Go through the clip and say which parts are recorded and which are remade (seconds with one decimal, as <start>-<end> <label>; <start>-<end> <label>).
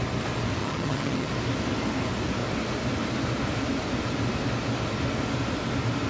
0.0-0.6 recorded; 0.6-1.3 remade; 1.3-6.1 recorded